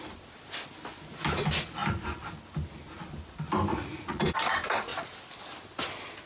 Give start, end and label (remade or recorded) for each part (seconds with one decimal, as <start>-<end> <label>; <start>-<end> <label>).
0.0-3.7 recorded; 3.7-4.2 remade; 4.2-6.3 recorded